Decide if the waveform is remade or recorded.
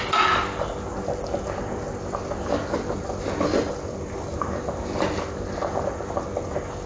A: recorded